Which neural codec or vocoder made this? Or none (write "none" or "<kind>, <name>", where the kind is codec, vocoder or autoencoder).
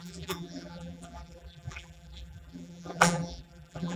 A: vocoder, BigVGAN v2